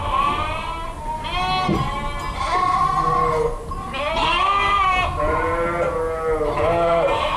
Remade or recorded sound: recorded